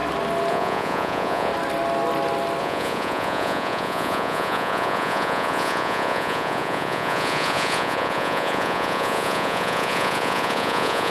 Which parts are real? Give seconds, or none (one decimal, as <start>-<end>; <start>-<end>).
0.0-0.5; 1.5-2.6